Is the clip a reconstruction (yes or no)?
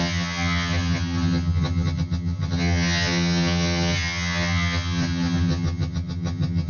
yes